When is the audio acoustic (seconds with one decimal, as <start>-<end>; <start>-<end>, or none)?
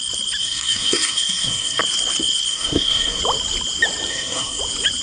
0.0-0.4; 1.8-2.5; 3.2-4.1; 4.6-5.0